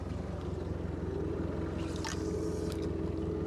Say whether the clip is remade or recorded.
recorded